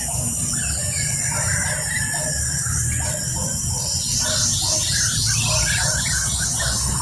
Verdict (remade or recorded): recorded